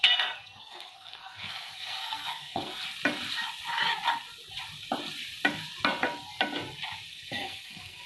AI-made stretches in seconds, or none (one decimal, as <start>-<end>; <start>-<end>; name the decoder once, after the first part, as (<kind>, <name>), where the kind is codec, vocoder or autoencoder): 0.0-2.8 (codec, SNAC); 7.1-8.1